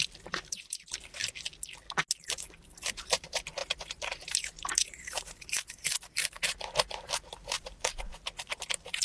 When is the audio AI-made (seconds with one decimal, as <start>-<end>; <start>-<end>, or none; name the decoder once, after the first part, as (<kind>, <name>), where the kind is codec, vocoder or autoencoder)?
0.0-1.2 (vocoder, BigVGAN v2); 2.7-9.0